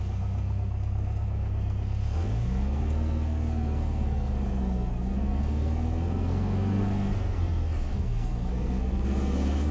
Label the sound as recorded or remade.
remade